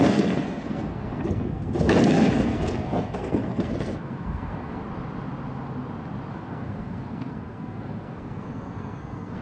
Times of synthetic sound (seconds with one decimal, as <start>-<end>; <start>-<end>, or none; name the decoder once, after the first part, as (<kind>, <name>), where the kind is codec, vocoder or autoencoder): 0.0-4.8 (codec, SNAC); 6.3-9.4